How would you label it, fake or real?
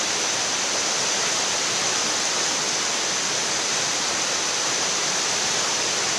real